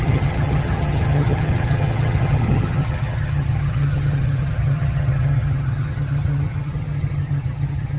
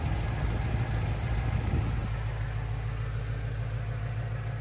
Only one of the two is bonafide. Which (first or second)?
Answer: second